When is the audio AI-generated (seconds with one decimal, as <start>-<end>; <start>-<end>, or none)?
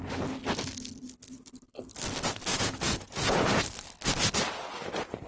2.5-3.4